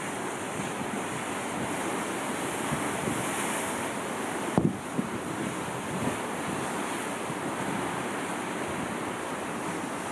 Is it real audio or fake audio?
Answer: real